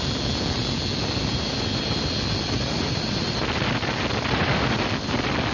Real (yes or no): yes